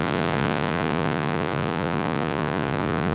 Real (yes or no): no